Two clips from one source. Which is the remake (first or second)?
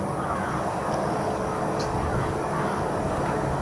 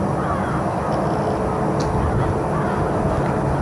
first